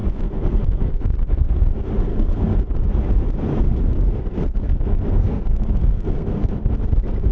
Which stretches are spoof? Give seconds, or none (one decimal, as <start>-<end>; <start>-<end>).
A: 0.0-1.7; 2.1-2.6; 3.5-6.5